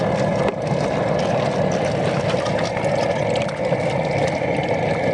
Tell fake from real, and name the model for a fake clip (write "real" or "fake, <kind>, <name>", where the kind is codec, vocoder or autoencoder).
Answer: real